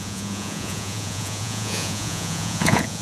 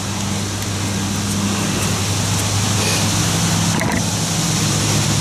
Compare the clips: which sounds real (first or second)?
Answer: second